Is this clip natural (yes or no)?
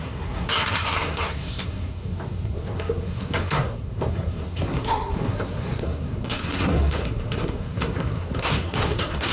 no